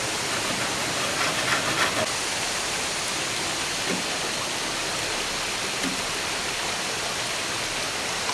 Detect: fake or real real